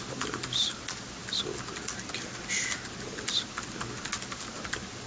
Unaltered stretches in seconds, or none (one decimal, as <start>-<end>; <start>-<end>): 1.4-4.5